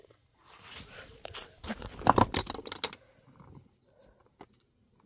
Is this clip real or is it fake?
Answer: real